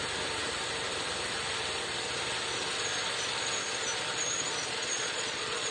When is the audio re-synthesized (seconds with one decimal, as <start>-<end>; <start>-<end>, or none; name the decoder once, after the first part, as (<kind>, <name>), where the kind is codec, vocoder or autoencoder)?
4.8-5.7 (vocoder, Vocos)